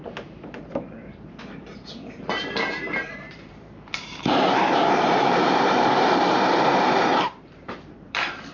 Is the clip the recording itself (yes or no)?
no